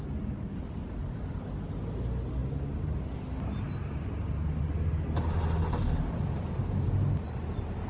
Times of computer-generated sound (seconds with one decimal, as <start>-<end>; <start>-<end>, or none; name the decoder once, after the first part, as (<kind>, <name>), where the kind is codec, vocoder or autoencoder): none